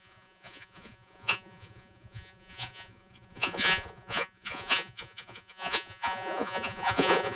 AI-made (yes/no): yes